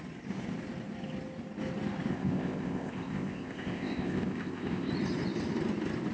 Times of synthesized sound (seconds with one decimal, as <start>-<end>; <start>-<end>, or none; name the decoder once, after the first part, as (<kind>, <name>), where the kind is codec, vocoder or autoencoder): 2.1-4.9 (codec, ZipCodec)